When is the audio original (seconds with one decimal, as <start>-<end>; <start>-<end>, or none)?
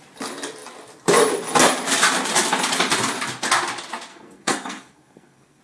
0.0-4.1